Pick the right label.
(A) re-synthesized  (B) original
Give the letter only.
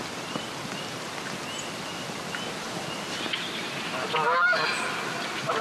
B